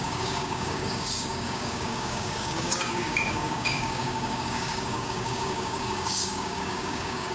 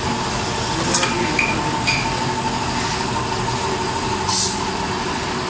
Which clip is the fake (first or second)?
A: first